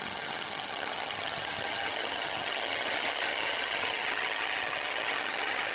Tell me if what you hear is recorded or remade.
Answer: remade